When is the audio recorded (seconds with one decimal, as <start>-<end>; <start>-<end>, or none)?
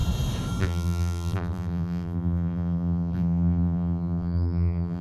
0.0-0.6